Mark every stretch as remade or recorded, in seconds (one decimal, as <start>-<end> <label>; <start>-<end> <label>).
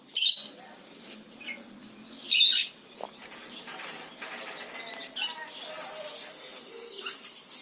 0.0-6.3 recorded; 6.3-7.0 remade; 7.0-7.6 recorded